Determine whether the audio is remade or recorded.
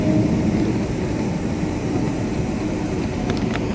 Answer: recorded